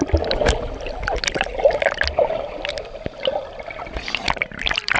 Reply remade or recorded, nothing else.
recorded